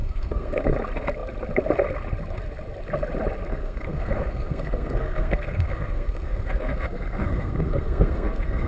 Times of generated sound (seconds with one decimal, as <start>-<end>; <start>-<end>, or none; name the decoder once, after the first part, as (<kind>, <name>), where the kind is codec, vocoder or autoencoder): 0.0-0.6 (codec, SNAC); 3.5-8.7